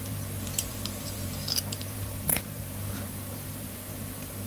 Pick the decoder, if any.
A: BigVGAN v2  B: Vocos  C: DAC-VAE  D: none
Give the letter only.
A